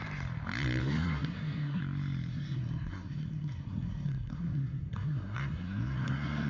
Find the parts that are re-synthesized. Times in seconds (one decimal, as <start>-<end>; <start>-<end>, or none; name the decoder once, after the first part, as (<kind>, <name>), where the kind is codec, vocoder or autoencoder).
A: 0.8-1.8 (codec, SNAC); 2.3-6.5